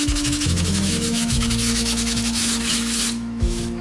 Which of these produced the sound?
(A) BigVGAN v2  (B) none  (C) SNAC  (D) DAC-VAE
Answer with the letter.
D